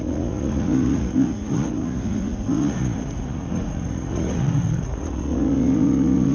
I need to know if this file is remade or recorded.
remade